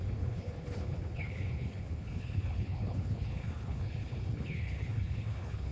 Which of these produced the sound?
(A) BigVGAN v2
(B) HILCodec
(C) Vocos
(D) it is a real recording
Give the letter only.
B